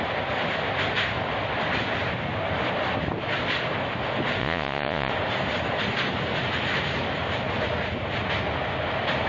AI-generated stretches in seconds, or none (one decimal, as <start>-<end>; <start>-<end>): 4.4-5.1